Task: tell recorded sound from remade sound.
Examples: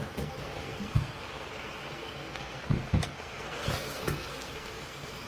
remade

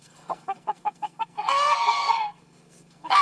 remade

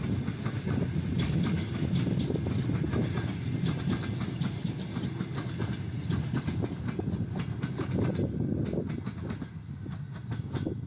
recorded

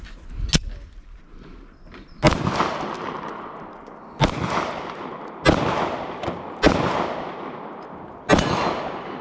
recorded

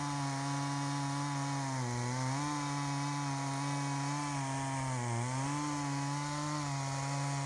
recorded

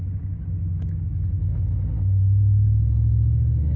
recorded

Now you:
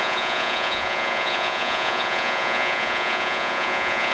remade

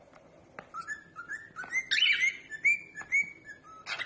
recorded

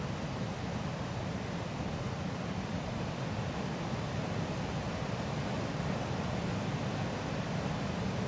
recorded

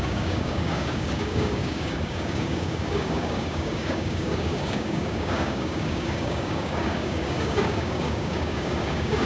remade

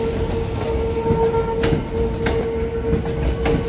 recorded